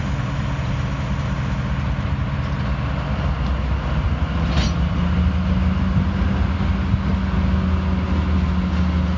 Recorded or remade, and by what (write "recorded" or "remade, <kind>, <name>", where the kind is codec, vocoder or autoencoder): recorded